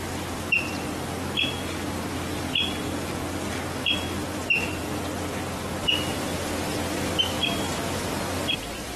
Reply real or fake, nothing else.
real